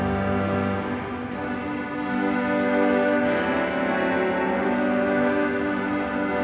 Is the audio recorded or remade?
recorded